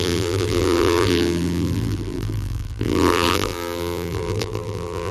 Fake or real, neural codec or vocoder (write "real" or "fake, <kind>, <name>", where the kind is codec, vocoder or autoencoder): fake, vocoder, BigVGAN v2